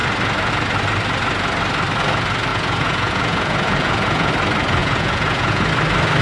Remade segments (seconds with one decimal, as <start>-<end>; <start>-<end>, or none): 2.5-4.3; 4.8-5.7